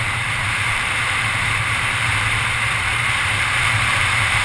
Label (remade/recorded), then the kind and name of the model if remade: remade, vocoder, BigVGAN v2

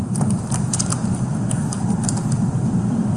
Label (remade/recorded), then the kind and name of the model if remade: remade, vocoder, BigVGAN v2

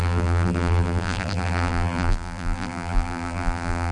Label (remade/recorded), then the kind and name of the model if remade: remade, vocoder, BigVGAN v2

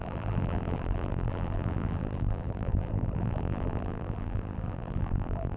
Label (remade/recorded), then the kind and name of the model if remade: remade, vocoder, BigVGAN v2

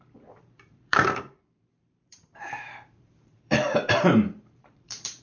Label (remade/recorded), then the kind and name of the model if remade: remade, vocoder, BigVGAN v2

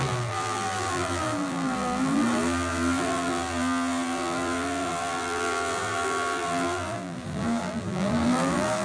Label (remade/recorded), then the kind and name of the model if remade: remade, vocoder, BigVGAN v2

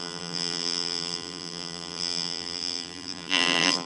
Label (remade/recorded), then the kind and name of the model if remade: remade, vocoder, BigVGAN v2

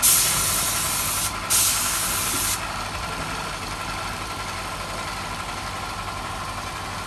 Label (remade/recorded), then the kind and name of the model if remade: recorded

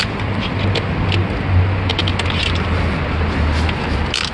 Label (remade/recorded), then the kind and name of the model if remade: recorded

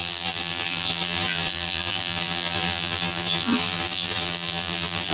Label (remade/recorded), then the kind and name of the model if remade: remade, vocoder, BigVGAN v2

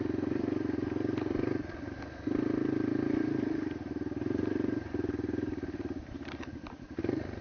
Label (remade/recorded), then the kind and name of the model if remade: remade, vocoder, BigVGAN v2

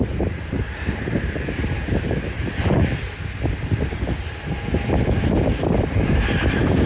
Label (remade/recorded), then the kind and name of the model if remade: remade, vocoder, BigVGAN v2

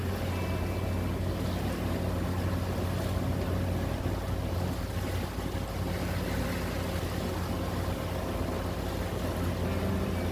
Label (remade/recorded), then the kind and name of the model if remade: recorded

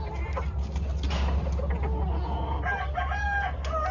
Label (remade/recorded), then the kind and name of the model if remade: recorded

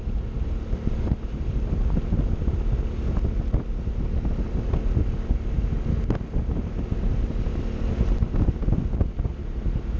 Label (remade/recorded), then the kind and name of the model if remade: recorded